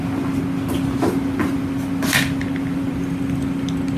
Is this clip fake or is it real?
real